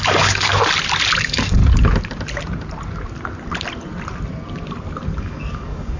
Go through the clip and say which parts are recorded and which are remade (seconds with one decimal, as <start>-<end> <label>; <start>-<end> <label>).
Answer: 0.0-0.6 remade; 0.6-1.2 recorded; 1.2-1.6 remade; 1.6-5.2 recorded; 5.2-6.0 remade